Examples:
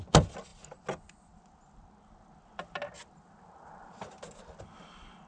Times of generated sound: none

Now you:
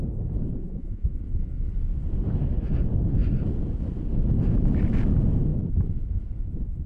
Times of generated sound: 0.6-1.1